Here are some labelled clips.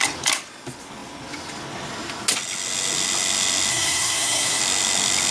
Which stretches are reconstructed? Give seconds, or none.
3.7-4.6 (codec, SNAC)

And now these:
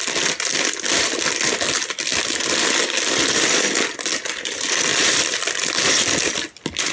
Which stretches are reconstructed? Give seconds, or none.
4.9-5.6 (vocoder, BigVGAN v2)

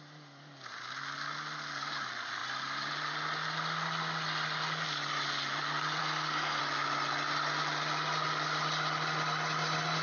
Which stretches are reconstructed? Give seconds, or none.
6.0-6.6 (codec, SNAC)

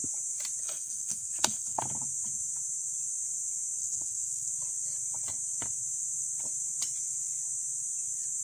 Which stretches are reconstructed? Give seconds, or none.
0.6-1.8 (codec, SNAC); 3.8-4.5

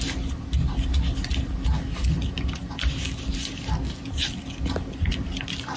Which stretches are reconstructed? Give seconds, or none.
none